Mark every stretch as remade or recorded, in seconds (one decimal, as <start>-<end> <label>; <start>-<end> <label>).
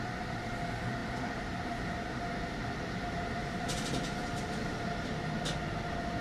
0.0-3.4 recorded; 3.4-4.7 remade; 4.7-6.2 recorded